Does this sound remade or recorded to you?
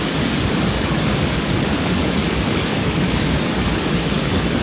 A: remade